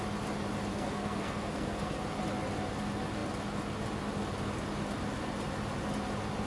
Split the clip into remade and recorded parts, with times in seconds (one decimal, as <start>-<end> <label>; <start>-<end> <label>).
0.0-0.7 recorded; 0.7-2.0 remade; 2.0-6.5 recorded